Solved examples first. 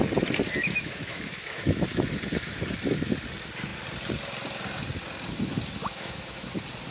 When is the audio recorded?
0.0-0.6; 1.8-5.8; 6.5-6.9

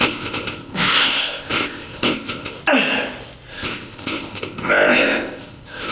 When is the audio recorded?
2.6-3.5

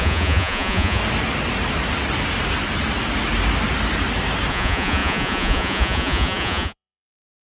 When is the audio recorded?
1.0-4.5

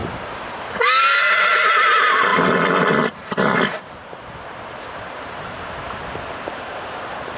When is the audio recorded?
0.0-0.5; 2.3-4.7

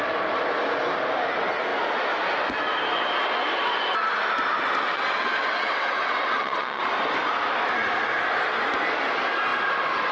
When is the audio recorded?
0.0-4.9; 6.8-10.1

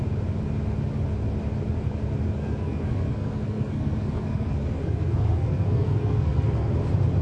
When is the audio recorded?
0.0-2.4; 6.7-7.2

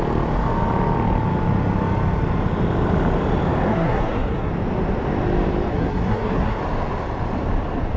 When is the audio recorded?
0.0-3.7; 4.5-5.7; 6.6-8.0